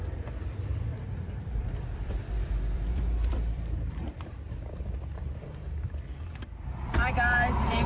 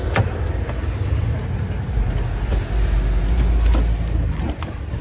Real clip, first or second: second